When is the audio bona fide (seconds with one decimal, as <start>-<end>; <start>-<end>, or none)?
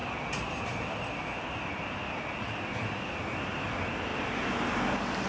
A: 0.0-5.3